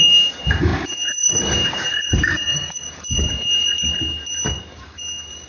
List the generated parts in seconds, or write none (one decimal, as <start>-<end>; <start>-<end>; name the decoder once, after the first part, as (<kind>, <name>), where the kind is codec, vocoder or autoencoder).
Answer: 0.0-3.6 (codec, DAC); 4.5-5.5

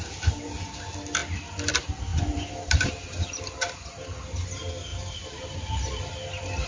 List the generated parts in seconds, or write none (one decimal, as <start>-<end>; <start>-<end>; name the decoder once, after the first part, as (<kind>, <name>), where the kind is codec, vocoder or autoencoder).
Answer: 2.1-2.9 (vocoder, BigVGAN v2); 4.9-6.1

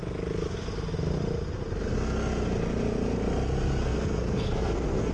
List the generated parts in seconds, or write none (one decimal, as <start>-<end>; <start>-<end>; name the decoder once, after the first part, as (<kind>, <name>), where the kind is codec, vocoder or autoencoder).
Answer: 3.8-5.1 (codec, SNAC)

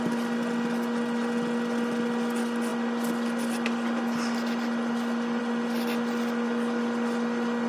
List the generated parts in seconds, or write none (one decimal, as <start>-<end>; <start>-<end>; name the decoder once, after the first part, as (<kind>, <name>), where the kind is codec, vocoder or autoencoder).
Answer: none